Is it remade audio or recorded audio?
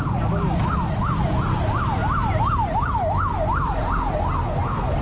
recorded